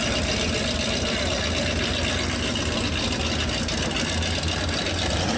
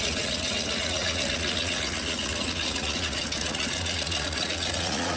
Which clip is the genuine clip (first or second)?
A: first